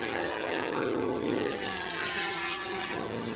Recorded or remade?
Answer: remade